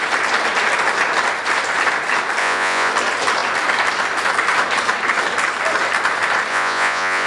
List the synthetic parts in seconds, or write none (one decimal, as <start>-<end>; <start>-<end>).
2.4-2.9; 6.5-7.3